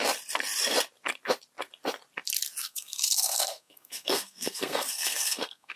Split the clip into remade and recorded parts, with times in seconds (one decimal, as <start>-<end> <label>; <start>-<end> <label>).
0.0-2.6 recorded; 2.6-5.8 remade